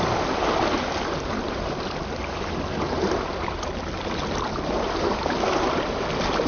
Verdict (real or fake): real